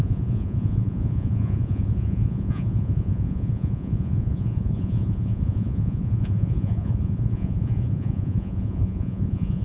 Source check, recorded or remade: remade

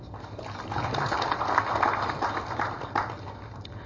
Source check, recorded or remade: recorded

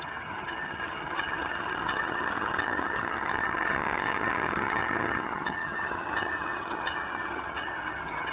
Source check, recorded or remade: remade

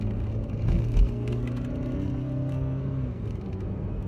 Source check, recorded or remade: remade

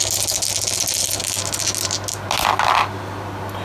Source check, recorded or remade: recorded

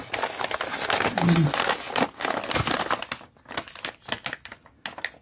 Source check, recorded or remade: recorded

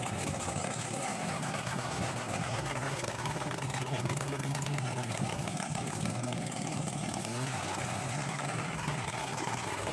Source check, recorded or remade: remade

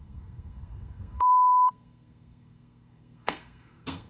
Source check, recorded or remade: remade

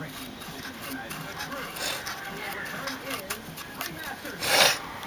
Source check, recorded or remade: recorded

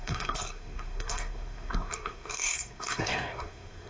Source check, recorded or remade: remade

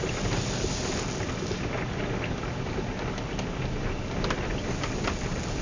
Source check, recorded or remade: recorded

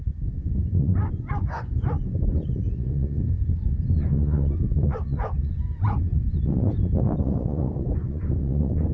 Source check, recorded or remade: remade